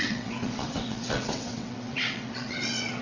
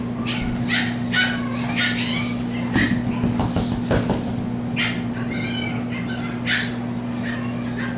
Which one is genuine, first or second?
second